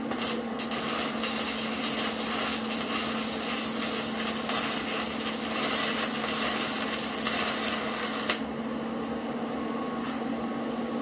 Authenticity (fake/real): real